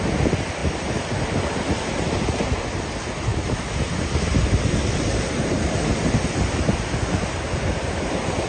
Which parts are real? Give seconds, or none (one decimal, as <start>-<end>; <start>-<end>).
0.0-8.5